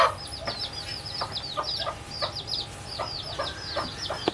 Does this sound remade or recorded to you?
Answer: recorded